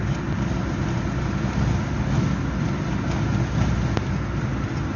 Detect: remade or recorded recorded